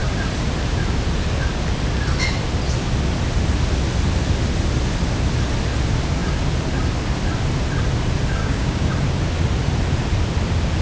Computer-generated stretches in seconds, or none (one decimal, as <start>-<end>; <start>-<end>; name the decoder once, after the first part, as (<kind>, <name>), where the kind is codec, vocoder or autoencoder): 8.4-8.9 (codec, DAC)

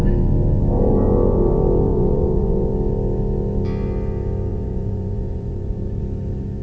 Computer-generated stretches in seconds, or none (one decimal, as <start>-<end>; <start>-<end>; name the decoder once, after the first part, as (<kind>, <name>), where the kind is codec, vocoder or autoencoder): 1.9-2.7 (vocoder, Vocos); 4.5-6.0

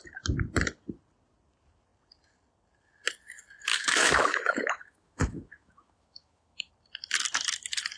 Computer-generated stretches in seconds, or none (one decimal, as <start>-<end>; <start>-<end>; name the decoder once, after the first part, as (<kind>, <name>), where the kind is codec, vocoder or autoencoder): 3.7-6.7 (autoencoder, DAC-VAE)